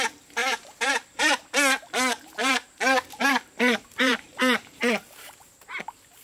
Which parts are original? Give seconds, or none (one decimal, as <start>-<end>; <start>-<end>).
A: 0.0-0.4; 1.3-2.4; 5.5-6.2